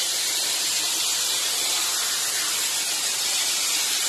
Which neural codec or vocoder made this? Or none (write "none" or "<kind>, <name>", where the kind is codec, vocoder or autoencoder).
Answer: none